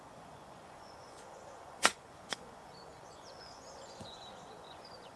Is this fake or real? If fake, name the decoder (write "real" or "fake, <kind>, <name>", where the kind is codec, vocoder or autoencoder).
fake, vocoder, Vocos